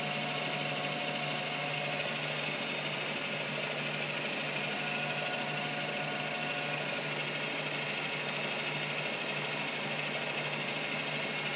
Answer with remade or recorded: recorded